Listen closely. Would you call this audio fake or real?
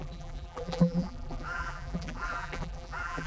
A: fake